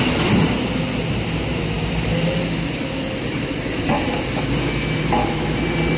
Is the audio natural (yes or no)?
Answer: yes